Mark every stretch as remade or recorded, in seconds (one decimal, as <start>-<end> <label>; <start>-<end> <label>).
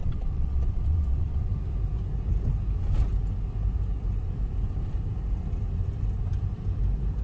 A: 0.0-1.5 remade; 1.5-7.2 recorded